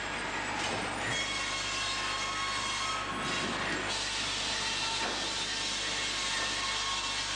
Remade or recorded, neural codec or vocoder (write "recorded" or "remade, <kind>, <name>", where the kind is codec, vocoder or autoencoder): recorded